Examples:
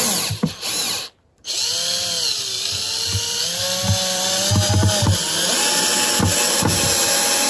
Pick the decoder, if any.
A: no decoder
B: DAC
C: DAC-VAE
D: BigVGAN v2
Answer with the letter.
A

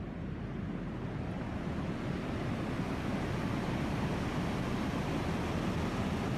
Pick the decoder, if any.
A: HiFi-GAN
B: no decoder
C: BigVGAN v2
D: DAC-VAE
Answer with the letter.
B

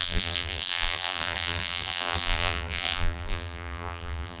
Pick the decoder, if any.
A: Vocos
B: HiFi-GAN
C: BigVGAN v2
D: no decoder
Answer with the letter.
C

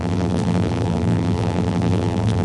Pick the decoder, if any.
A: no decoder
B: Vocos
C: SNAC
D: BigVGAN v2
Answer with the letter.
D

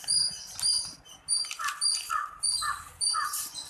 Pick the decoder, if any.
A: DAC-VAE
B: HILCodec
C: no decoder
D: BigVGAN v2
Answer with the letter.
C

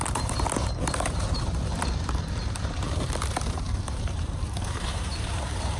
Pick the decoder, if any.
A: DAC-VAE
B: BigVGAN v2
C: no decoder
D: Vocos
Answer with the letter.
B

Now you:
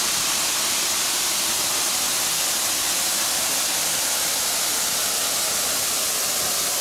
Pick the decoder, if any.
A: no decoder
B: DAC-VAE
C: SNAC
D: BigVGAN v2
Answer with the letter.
A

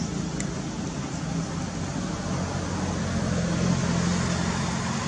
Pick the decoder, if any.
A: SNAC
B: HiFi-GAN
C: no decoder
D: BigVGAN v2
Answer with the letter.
C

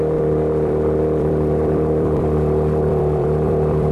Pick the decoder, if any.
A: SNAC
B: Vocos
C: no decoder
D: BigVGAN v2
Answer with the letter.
D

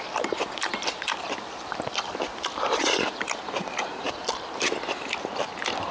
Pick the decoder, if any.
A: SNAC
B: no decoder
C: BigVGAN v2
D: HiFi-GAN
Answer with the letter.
C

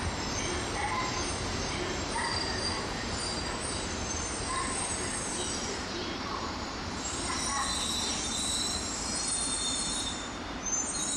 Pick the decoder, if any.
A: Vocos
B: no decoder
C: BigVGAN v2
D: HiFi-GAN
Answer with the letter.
C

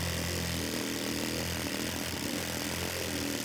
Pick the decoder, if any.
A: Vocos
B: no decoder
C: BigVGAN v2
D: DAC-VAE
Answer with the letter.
B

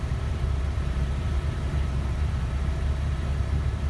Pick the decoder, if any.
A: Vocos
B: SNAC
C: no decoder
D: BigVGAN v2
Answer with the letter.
D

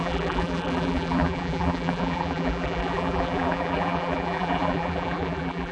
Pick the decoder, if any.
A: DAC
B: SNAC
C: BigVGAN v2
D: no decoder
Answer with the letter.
C